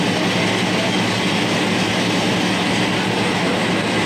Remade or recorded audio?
recorded